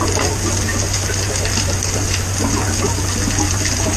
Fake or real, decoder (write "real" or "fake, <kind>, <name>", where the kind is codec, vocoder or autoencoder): real